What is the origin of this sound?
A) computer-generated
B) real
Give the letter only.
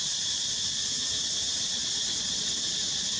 B